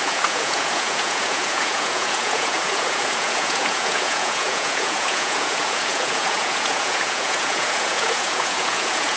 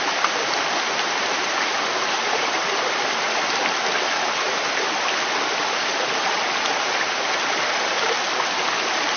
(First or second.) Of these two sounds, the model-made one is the first